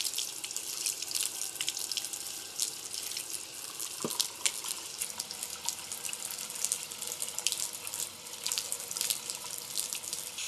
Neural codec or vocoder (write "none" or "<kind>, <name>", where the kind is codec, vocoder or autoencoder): none